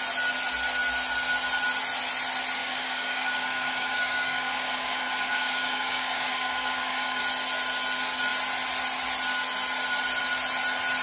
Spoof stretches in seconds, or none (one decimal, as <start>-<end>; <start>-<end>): 2.6-7.2

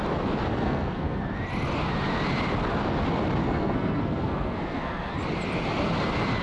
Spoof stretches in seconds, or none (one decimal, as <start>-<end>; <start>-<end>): 0.5-1.2; 3.4-5.1

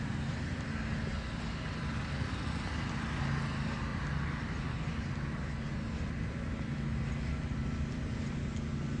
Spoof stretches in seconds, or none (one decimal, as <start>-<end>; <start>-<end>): 3.9-4.6

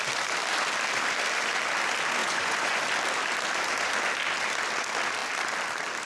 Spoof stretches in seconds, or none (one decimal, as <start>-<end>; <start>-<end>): 2.2-2.8